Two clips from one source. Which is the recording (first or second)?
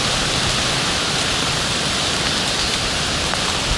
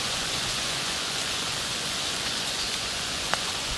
first